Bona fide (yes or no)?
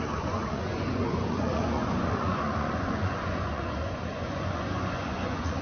no